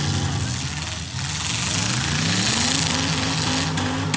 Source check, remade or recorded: recorded